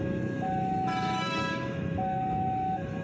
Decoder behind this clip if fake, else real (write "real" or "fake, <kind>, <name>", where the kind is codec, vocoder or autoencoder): fake, autoencoder, DAC-VAE